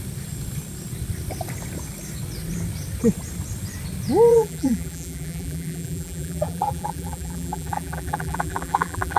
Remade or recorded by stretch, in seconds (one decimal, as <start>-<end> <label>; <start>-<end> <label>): 0.0-4.3 recorded; 4.3-9.2 remade